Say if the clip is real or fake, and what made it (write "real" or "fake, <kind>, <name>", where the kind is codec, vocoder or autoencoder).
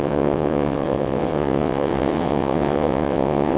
fake, vocoder, WaveNeXt